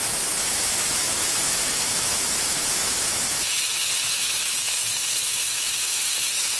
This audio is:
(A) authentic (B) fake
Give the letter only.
B